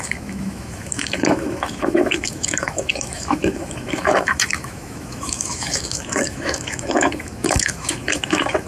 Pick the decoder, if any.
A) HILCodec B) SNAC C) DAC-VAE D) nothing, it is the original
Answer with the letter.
C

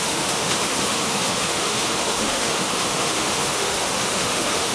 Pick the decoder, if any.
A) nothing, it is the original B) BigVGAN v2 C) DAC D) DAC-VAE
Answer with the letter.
D